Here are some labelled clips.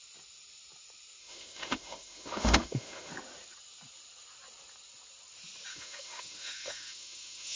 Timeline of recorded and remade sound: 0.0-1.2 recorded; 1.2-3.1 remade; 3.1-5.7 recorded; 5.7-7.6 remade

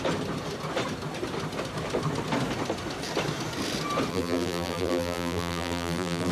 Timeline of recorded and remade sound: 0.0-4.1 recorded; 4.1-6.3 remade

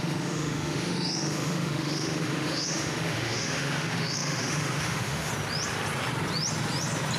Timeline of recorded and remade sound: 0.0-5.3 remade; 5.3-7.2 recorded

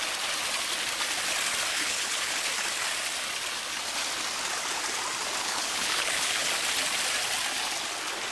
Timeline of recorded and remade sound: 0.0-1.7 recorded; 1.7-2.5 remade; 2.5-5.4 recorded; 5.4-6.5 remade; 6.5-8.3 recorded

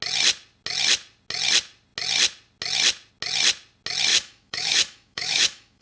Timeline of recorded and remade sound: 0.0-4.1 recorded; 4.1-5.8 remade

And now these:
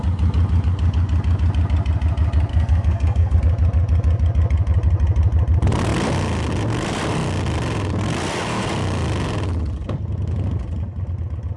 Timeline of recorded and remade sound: 0.0-2.5 recorded; 2.5-3.4 remade; 3.4-11.6 recorded

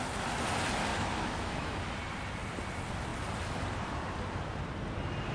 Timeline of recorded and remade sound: 0.0-0.9 recorded; 0.9-1.9 remade; 1.9-5.3 recorded

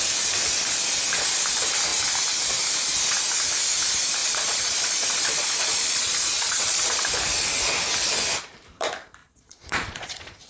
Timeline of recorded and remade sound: 0.0-4.2 recorded; 4.2-7.0 remade; 7.0-9.2 recorded; 9.2-10.5 remade